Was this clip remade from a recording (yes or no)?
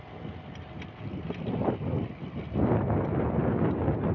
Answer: no